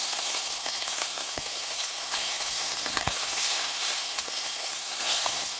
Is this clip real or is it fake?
fake